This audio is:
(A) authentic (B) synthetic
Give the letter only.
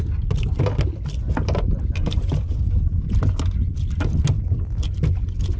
A